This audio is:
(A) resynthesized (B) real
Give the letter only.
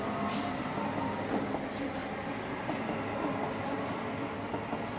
B